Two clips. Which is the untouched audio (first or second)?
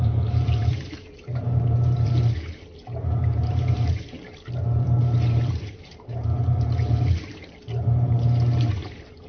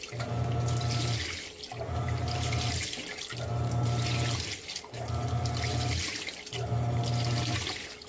second